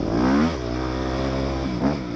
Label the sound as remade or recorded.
recorded